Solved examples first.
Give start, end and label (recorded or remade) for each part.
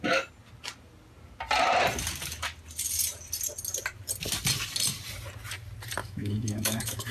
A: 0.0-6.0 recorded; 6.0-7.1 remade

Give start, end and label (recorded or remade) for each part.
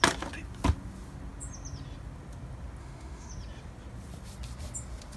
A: 0.0-2.8 recorded; 2.8-3.3 remade; 3.3-5.2 recorded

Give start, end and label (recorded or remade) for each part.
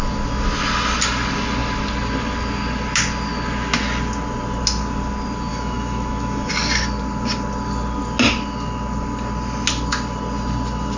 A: 0.0-5.5 recorded; 5.5-6.5 remade; 6.5-11.0 recorded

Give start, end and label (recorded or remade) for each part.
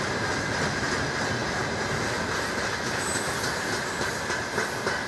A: 0.0-5.1 recorded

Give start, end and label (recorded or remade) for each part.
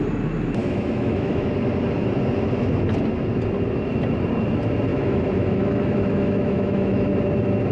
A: 0.0-0.6 recorded; 0.6-1.5 remade; 1.5-4.9 recorded; 4.9-7.1 remade; 7.1-7.7 recorded